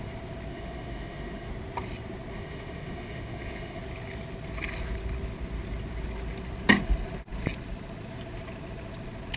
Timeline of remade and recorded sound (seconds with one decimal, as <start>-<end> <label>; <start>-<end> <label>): 0.0-0.5 recorded; 0.5-1.5 remade; 1.5-2.3 recorded; 2.3-3.8 remade; 3.8-9.4 recorded